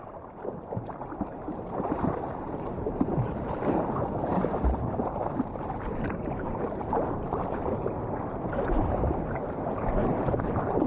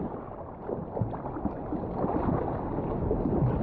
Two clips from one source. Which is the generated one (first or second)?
first